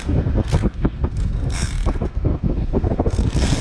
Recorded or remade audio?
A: remade